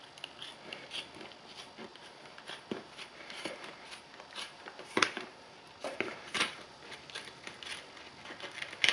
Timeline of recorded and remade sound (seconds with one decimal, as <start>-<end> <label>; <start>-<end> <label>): 0.0-1.9 recorded; 1.9-7.2 remade; 7.2-8.9 recorded